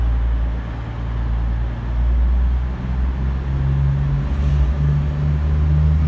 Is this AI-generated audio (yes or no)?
no